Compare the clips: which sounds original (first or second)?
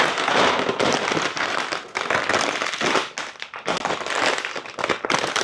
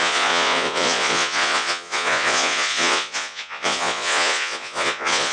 first